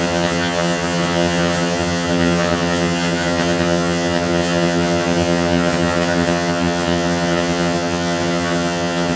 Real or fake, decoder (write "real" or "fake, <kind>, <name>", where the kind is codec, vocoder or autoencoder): fake, vocoder, HiFi-GAN